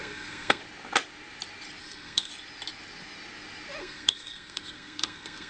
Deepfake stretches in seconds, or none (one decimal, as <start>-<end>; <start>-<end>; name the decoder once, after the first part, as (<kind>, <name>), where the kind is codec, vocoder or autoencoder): 0.0-0.6 (codec, SNAC); 1.8-2.3; 3.8-5.5